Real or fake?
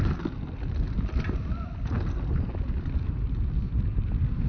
real